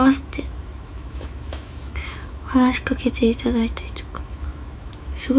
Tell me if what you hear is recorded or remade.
remade